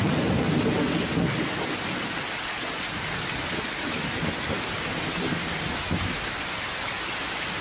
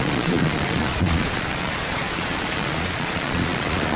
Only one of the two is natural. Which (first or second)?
first